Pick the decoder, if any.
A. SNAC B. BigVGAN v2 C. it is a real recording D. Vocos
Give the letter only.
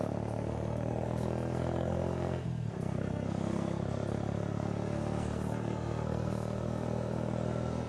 A